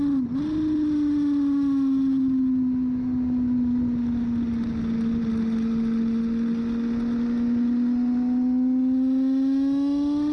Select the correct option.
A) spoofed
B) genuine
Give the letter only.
B